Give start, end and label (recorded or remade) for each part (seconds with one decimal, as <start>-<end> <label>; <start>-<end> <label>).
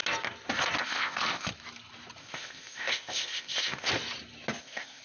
0.0-0.8 recorded; 0.8-1.5 remade; 1.5-2.2 recorded; 2.2-3.9 remade; 3.9-4.6 recorded; 4.6-5.0 remade